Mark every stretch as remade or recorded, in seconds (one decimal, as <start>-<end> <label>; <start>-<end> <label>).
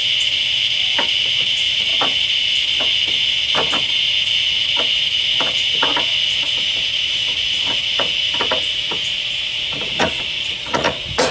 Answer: 0.0-1.2 recorded; 1.2-1.9 remade; 1.9-4.2 recorded; 4.2-11.3 remade